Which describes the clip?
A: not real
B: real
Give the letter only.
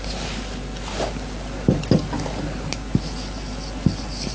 B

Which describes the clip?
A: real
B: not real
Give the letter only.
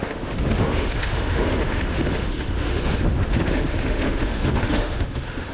B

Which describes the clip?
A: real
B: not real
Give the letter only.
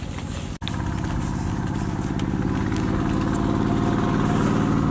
A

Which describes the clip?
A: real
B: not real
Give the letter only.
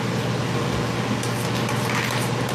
A